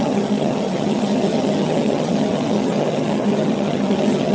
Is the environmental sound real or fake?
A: fake